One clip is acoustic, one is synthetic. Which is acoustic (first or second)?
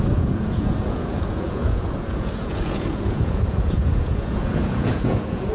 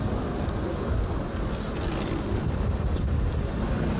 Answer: second